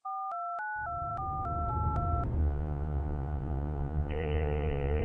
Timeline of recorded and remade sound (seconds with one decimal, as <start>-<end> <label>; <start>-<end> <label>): 0.0-2.4 recorded; 2.4-5.0 remade